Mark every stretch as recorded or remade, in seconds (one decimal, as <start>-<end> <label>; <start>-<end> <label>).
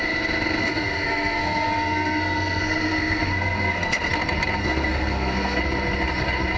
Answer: 0.0-0.6 recorded; 0.6-4.1 remade; 4.1-4.6 recorded; 4.6-5.6 remade; 5.6-6.6 recorded